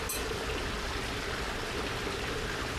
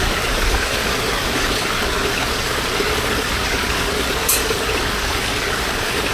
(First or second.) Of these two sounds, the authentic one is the first